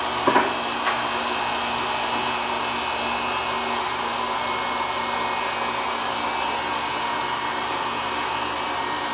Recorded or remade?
recorded